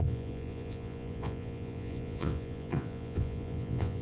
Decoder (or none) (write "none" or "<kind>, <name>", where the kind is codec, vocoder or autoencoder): vocoder, Vocos